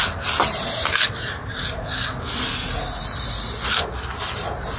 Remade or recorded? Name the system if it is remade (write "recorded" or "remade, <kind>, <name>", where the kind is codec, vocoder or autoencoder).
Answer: recorded